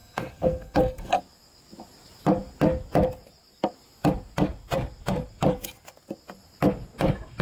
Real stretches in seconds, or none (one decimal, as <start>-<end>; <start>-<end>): 1.2-7.4